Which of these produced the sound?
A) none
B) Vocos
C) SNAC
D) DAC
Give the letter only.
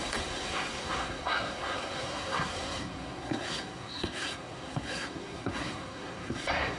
C